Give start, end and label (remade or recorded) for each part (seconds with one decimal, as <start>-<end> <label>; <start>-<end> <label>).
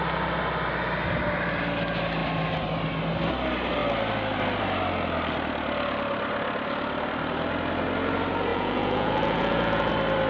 0.0-8.5 recorded; 8.5-9.9 remade; 9.9-10.3 recorded